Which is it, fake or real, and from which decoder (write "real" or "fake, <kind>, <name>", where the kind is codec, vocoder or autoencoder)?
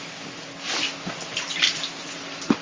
real